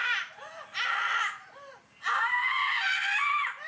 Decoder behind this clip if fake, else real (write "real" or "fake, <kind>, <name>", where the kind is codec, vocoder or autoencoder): fake, vocoder, BigVGAN v2